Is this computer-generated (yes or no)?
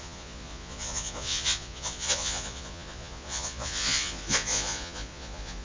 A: yes